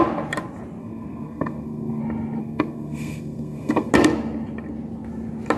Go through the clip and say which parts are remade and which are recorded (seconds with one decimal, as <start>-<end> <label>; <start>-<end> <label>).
0.0-0.8 recorded; 0.8-2.0 remade; 2.0-2.4 recorded; 2.4-3.9 remade; 3.9-5.6 recorded